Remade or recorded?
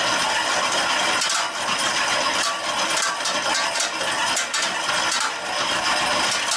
recorded